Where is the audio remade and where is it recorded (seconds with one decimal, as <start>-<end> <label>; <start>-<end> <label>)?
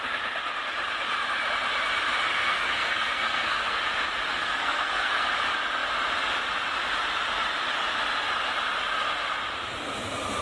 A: 0.0-2.3 recorded; 2.3-3.8 remade; 3.8-4.4 recorded; 4.4-5.3 remade; 5.3-10.4 recorded